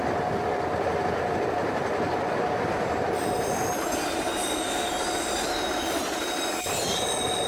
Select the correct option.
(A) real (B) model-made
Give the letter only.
A